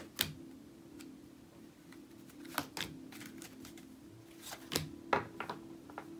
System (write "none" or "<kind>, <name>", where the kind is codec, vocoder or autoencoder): none